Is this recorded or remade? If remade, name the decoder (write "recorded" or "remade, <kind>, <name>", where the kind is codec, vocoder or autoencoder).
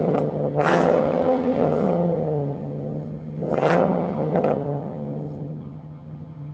remade, vocoder, HiFi-GAN